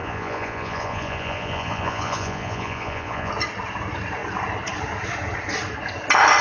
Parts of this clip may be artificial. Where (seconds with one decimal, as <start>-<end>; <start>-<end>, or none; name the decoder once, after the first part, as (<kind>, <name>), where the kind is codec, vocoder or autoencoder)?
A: 0.0-3.3 (vocoder, Vocos)